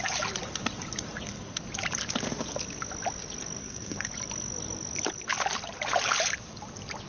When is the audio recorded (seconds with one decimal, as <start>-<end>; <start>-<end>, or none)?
0.0-3.6; 4.1-7.1